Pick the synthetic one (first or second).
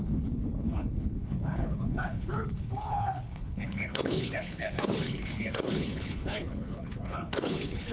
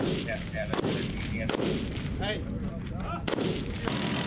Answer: first